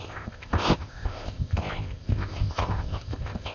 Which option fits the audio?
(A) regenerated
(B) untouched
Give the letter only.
A